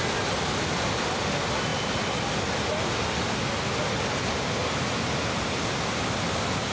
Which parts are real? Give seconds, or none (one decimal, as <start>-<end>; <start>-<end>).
0.0-6.7